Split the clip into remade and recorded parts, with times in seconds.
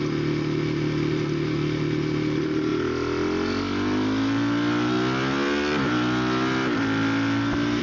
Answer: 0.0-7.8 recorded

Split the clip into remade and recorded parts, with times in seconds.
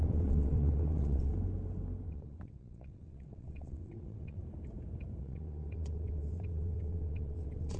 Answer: 0.0-1.3 remade; 1.3-2.1 recorded; 2.1-4.4 remade; 4.4-5.2 recorded; 5.2-7.8 remade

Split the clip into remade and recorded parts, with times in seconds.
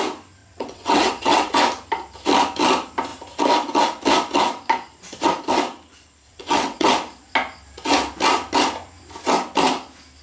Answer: 0.0-0.4 recorded; 0.4-1.5 remade; 1.5-6.3 recorded; 6.3-6.9 remade; 6.9-10.2 recorded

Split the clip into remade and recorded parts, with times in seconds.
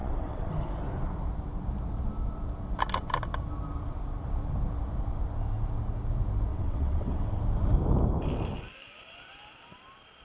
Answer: 0.0-0.5 remade; 0.5-6.5 recorded; 6.5-7.4 remade; 7.4-10.2 recorded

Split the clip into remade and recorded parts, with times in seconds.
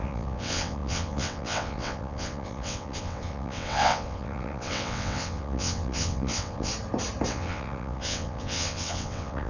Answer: 0.0-6.7 remade; 6.7-7.3 recorded; 7.3-9.5 remade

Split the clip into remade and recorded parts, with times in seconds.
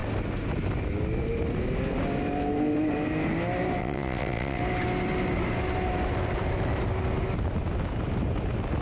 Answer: 0.0-3.8 recorded; 3.8-4.6 remade; 4.6-8.8 recorded